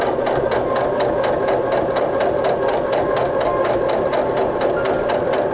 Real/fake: real